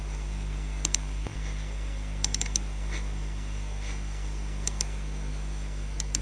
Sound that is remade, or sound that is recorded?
remade